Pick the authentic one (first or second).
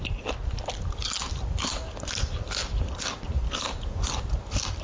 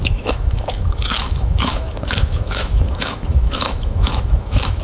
first